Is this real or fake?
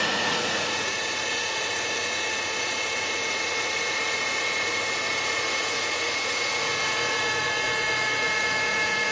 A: fake